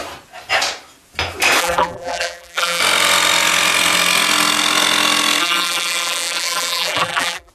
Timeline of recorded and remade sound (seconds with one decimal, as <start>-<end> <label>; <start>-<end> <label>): 0.0-1.6 recorded; 1.6-2.8 remade; 2.8-5.4 recorded; 5.4-7.5 remade